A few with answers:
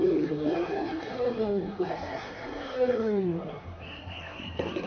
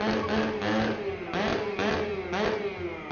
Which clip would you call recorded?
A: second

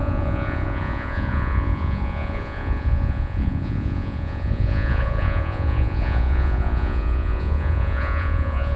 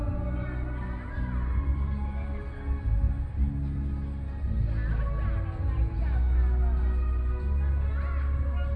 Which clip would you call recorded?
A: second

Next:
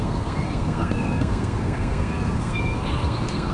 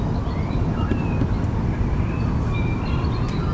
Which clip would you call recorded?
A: second